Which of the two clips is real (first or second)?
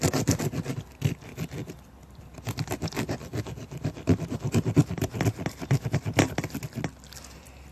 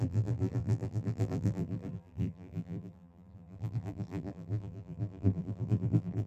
first